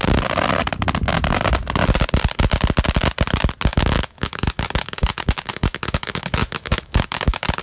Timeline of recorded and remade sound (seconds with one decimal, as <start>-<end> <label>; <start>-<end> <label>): 0.0-3.7 recorded; 3.7-7.6 remade